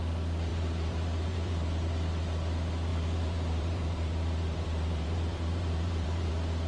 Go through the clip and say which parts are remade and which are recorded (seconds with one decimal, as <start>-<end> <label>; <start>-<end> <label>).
0.0-0.5 recorded; 0.5-2.1 remade; 2.1-2.9 recorded; 2.9-6.3 remade; 6.3-6.7 recorded

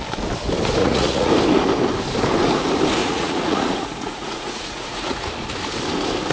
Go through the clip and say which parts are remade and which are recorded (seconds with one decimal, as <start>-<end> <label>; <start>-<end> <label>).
0.0-0.8 recorded; 0.8-1.3 remade; 1.3-3.0 recorded; 3.0-5.3 remade; 5.3-6.3 recorded

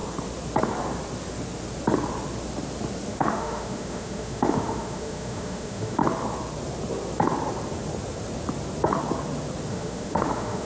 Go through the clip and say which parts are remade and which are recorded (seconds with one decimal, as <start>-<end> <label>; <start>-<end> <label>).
0.0-3.1 recorded; 3.1-6.0 remade; 6.0-9.7 recorded; 9.7-10.6 remade